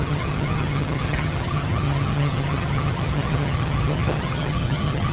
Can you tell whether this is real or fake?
fake